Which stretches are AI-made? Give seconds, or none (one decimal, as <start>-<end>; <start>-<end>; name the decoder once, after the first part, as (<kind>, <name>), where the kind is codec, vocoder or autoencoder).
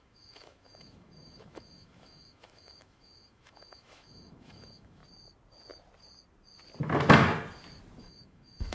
0.0-5.0 (autoencoder, DAC-VAE); 8.0-8.7